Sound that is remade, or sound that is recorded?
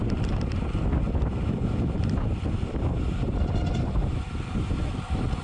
recorded